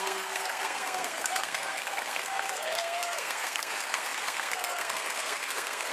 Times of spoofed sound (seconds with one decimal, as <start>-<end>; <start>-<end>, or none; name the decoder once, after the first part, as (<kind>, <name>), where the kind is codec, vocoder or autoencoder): 0.0-5.9 (codec, SNAC)